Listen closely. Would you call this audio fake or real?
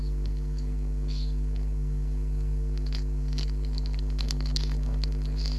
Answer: fake